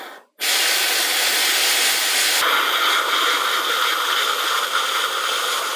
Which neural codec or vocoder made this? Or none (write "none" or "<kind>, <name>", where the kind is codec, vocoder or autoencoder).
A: none